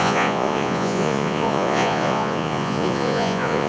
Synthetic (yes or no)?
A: yes